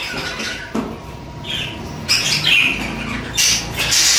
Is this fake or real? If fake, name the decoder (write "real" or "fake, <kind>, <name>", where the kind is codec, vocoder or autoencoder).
real